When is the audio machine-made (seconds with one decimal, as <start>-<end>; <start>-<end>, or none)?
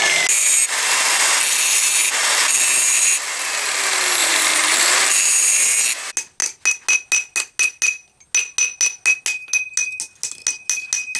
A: 4.2-5.3